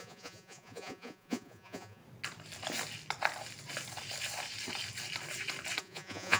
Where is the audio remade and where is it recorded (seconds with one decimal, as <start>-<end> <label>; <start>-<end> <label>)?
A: 0.0-2.0 remade; 2.0-5.8 recorded; 5.8-6.4 remade